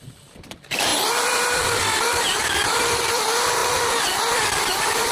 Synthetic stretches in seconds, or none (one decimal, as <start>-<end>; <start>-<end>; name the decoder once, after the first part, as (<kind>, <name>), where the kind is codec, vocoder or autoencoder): 0.0-5.1 (vocoder, BigVGAN v2)